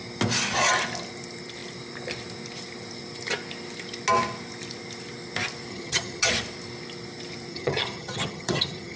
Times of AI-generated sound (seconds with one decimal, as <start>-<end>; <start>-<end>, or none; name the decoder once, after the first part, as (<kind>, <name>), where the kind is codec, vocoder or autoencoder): 5.7-6.3 (vocoder, HiFi-GAN); 7.5-9.0

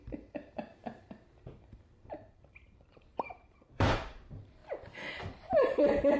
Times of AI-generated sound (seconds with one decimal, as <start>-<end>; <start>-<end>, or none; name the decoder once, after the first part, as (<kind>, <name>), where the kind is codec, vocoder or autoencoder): 0.0-4.6 (vocoder, BigVGAN v2); 5.1-6.2